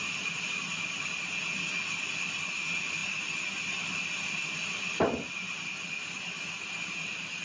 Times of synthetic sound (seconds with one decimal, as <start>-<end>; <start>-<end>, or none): none